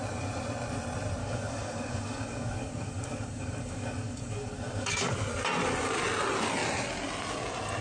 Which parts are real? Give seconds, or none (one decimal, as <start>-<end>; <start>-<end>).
0.0-1.2; 5.1-7.8